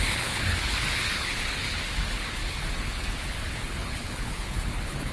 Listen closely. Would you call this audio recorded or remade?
remade